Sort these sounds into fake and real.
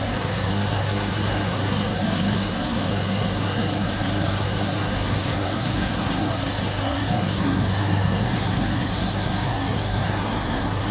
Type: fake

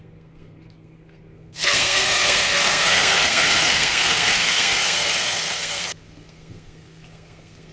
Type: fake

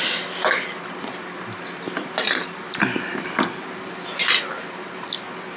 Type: real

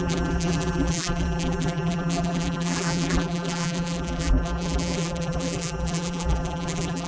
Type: fake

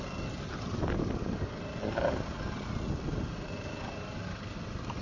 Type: real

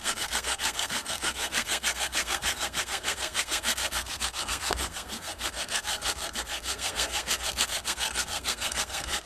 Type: fake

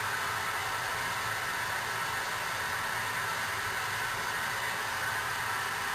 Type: real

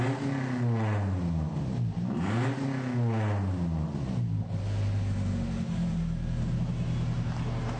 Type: real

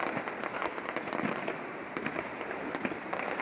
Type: real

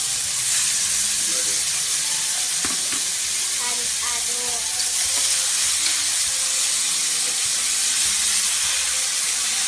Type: real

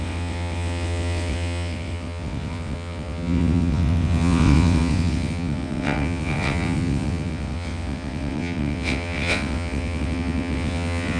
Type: fake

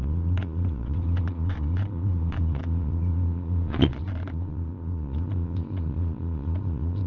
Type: fake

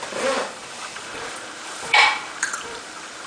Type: fake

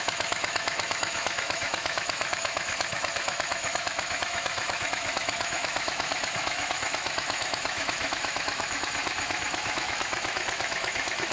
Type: fake